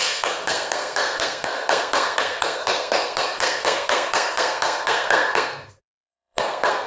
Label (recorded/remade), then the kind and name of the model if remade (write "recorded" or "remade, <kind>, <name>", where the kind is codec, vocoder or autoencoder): remade, codec, SNAC